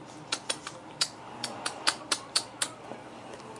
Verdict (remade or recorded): remade